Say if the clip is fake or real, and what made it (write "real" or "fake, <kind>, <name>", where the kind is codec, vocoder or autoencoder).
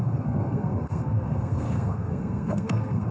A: fake, codec, SNAC